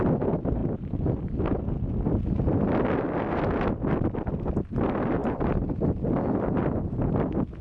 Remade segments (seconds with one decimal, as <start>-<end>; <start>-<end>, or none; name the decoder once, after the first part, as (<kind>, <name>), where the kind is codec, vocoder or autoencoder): 5.2-5.7 (vocoder, BigVGAN v2)